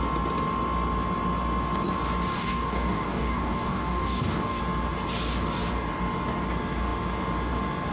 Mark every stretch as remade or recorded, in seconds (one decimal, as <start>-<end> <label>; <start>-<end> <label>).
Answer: 0.0-2.3 recorded; 2.3-4.6 remade; 4.6-7.9 recorded